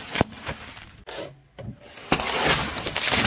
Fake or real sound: real